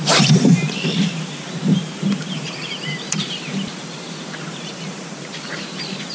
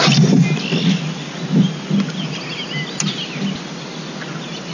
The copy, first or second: first